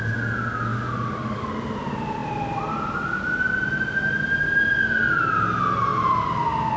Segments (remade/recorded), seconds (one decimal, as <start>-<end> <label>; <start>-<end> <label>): 0.0-0.7 recorded; 0.7-1.5 remade; 1.5-6.8 recorded